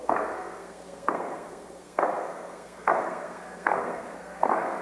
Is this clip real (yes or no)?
no